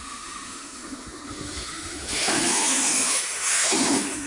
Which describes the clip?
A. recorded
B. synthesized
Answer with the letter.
B